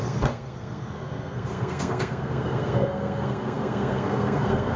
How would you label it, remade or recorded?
remade